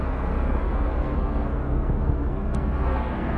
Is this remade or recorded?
remade